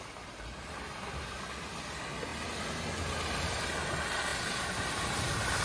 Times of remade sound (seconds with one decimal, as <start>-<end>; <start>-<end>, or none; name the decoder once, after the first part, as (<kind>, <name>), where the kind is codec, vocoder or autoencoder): none

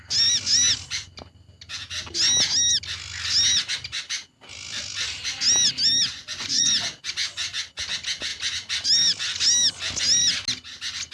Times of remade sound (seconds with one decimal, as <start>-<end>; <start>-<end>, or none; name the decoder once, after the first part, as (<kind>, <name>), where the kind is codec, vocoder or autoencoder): 6.1-6.7 (vocoder, Vocos)